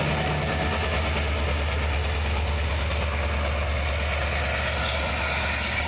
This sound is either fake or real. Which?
real